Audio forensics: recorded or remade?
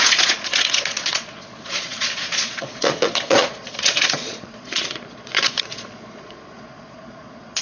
remade